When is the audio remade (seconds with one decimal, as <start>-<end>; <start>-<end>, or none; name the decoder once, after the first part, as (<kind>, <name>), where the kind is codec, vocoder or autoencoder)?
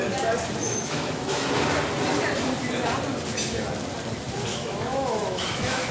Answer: 0.6-1.5 (autoencoder, DAC-VAE); 4.5-5.9